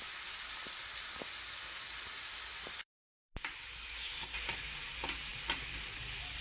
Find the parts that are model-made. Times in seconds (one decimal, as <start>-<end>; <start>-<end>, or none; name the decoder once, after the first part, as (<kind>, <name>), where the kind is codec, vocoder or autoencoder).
0.0-0.6 (vocoder, BigVGAN v2); 2.5-4.2